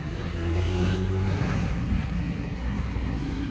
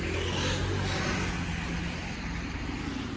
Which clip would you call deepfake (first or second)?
first